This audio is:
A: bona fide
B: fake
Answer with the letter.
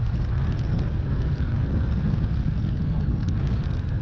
B